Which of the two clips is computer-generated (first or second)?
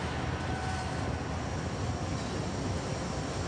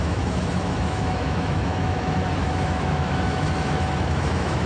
second